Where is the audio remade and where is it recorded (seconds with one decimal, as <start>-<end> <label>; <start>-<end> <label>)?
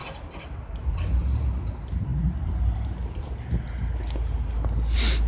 0.0-5.3 recorded